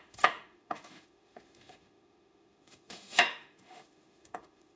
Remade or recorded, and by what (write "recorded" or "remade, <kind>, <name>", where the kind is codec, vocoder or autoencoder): remade, autoencoder, DAC-VAE